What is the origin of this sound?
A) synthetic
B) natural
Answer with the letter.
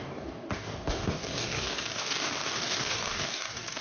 A